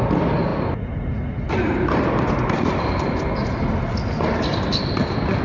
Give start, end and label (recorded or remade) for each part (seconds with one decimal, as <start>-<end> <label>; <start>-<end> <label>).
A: 0.0-5.4 recorded